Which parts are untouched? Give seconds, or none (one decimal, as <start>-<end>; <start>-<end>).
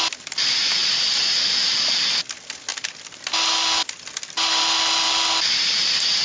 0.0-6.2